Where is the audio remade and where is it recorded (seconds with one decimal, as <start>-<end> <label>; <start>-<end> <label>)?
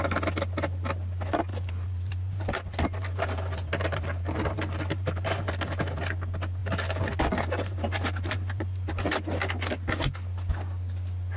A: 0.0-1.5 recorded; 1.5-5.5 remade; 5.5-6.6 recorded; 6.6-9.1 remade; 9.1-11.4 recorded